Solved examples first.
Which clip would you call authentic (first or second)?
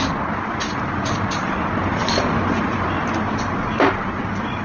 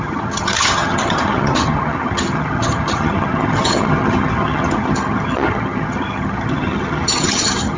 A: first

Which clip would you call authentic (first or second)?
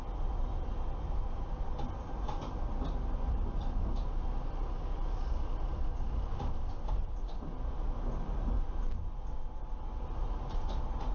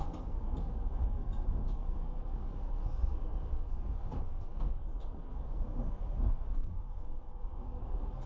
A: first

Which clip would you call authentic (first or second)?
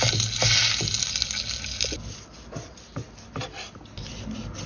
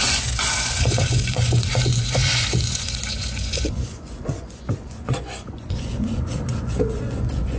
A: first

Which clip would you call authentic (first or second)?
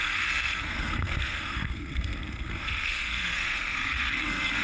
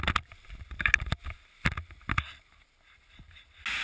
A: second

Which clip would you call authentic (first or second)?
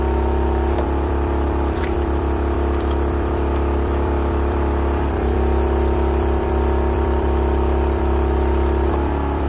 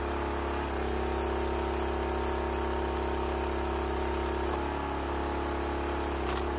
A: second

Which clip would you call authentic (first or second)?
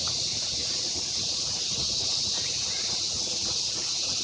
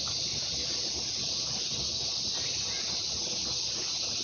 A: second